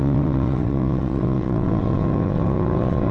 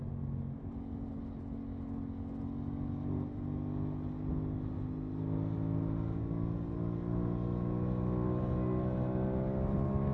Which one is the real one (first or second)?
second